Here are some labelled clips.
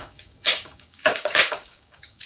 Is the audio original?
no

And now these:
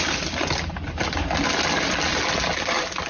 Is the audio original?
yes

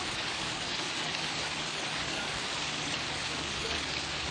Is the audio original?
no